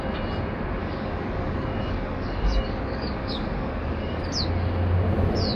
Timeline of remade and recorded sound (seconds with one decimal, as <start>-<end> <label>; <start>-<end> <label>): 0.0-0.8 recorded; 0.8-4.2 remade; 4.2-5.6 recorded